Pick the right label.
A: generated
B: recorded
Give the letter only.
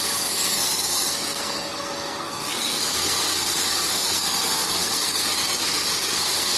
A